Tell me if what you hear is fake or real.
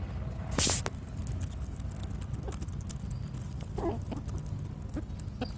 real